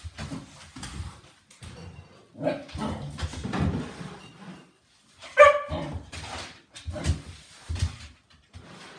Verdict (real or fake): real